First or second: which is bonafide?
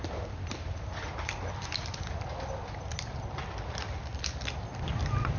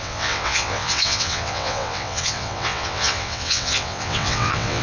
first